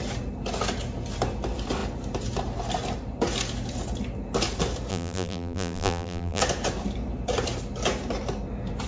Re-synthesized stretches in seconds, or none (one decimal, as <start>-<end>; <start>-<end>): 4.9-6.4